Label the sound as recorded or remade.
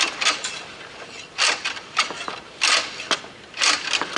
recorded